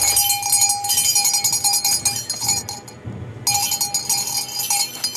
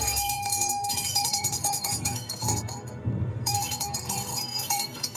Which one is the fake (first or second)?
second